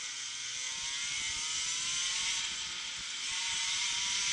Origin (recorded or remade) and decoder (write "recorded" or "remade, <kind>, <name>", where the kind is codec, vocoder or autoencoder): recorded